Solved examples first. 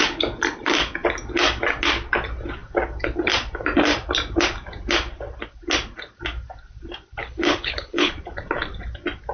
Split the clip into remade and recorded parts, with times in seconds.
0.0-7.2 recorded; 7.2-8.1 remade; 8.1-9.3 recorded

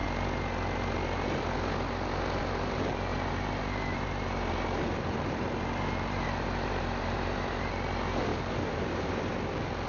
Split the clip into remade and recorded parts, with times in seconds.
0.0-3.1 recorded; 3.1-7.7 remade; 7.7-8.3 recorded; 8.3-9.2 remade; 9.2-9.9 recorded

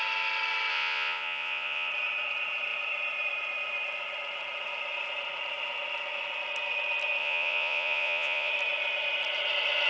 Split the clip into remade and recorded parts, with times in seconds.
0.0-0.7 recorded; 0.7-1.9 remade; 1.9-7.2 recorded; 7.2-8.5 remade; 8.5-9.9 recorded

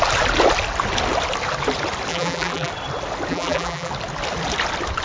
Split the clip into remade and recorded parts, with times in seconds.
0.0-2.1 recorded; 2.1-2.7 remade; 2.7-3.3 recorded; 3.3-3.9 remade; 3.9-5.0 recorded